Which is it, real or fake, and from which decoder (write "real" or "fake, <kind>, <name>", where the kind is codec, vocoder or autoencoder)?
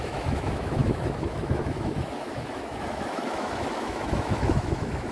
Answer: fake, autoencoder, DAC-VAE